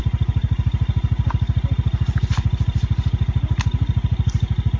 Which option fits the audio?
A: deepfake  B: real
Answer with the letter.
B